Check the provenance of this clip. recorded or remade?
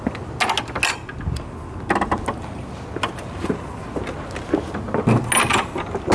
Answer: recorded